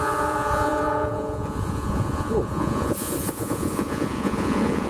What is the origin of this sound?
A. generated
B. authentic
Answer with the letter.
A